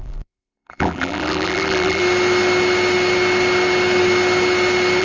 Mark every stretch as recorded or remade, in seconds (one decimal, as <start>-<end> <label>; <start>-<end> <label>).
0.0-2.0 remade; 2.0-5.0 recorded